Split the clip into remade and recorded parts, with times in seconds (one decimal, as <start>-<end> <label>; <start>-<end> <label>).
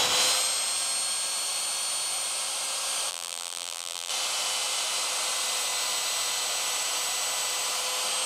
0.0-3.1 recorded; 3.1-4.1 remade; 4.1-8.3 recorded